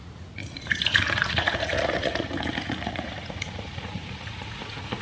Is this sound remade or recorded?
remade